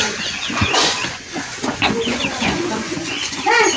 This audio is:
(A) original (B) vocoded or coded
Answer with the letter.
B